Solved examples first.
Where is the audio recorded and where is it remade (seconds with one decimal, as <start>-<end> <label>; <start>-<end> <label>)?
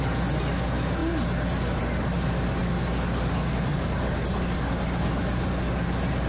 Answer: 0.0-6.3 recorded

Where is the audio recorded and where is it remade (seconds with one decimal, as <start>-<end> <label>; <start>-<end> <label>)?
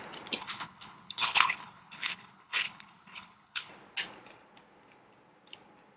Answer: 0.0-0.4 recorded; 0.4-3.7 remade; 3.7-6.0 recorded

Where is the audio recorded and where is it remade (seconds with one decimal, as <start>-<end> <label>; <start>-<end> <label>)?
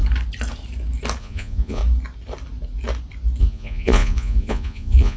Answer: 0.0-1.2 recorded; 1.2-1.8 remade; 1.8-3.4 recorded; 3.4-5.2 remade